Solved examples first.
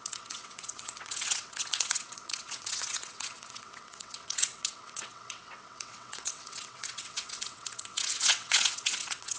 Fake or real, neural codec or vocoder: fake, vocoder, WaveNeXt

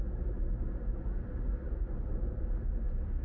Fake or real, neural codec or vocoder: real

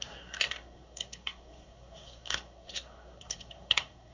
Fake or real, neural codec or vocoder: fake, codec, SNAC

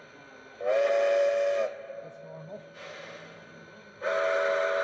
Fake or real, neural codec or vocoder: real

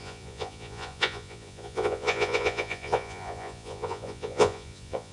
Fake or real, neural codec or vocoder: fake, vocoder, Vocos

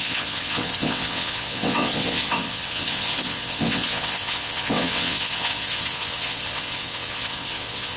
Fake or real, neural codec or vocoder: fake, vocoder, WaveNeXt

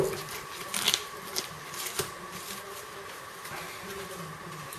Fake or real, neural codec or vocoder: real